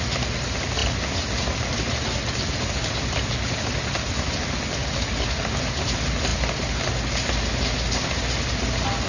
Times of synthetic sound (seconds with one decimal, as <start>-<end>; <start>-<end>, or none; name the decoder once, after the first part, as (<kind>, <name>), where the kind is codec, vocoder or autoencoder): none